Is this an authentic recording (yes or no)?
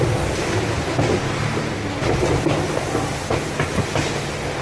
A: yes